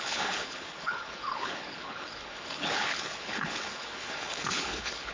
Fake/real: fake